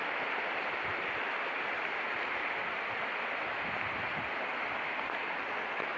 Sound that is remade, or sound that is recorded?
recorded